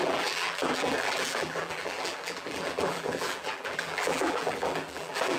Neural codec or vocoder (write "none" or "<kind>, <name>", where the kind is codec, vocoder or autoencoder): vocoder, BigVGAN v2